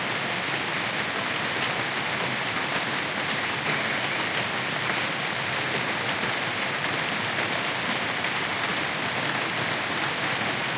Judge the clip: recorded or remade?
recorded